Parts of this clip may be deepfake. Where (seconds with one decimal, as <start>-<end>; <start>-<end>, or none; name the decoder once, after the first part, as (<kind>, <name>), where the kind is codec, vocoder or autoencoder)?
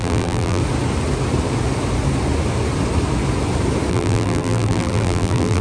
0.0-0.6 (vocoder, BigVGAN v2); 3.9-5.6